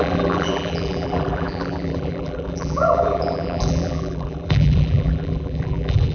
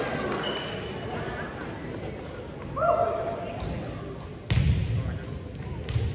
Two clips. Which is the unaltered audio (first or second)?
second